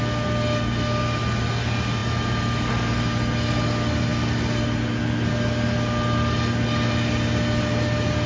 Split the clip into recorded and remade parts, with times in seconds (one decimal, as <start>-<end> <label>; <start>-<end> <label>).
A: 0.0-8.3 recorded